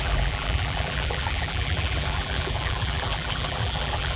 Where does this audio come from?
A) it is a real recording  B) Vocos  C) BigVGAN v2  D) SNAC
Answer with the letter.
C